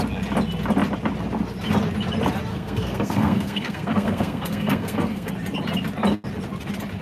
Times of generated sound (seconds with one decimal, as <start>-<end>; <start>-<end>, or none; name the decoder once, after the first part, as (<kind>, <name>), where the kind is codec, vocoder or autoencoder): 2.5-5.3 (codec, SNAC)